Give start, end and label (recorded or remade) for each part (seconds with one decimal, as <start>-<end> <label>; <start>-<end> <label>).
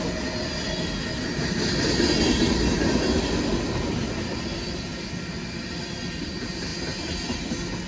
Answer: 0.0-7.9 recorded